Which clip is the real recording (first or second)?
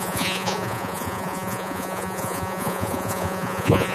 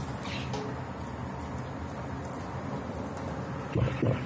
second